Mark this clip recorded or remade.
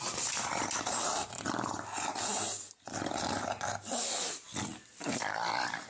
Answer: recorded